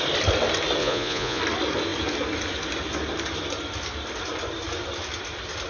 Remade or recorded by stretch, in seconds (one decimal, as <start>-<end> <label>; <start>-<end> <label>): 0.0-0.8 recorded; 0.8-1.4 remade; 1.4-5.7 recorded